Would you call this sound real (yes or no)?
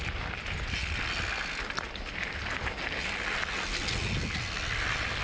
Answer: yes